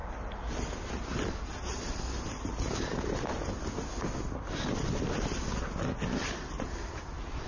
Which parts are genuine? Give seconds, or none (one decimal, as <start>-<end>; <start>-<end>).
0.0-7.5